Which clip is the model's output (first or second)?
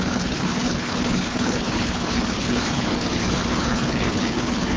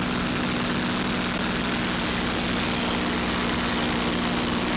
first